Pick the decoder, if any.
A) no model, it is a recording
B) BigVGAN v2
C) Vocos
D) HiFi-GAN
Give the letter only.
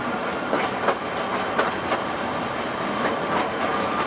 A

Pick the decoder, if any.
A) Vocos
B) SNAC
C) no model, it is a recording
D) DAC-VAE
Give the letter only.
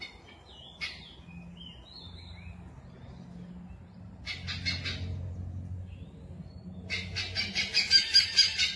C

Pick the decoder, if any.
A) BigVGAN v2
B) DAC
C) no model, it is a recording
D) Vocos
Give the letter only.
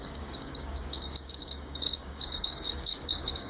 B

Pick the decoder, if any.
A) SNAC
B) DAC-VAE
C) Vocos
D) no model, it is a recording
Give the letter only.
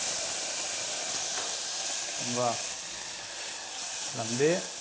D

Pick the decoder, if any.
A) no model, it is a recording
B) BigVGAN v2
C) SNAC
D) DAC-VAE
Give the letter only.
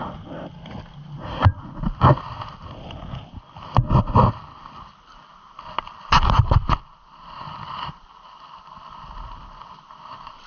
B